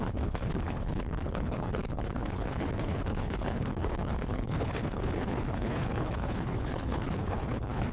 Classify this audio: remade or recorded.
remade